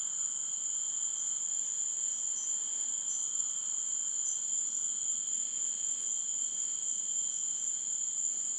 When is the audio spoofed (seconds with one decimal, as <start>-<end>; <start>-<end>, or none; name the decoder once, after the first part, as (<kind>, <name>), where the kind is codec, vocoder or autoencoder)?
none